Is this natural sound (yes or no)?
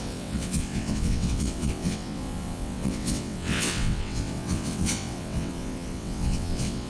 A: no